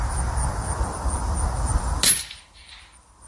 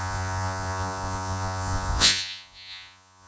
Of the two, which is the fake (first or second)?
second